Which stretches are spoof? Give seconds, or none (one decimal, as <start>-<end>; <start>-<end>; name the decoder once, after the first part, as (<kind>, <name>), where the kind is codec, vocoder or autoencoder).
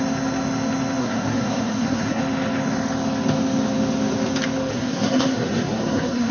1.0-2.2 (codec, SNAC); 4.7-6.3